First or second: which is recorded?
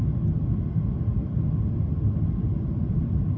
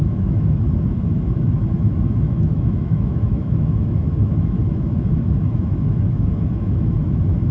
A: first